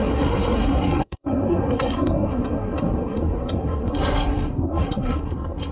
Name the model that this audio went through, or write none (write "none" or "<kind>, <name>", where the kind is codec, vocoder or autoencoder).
codec, SNAC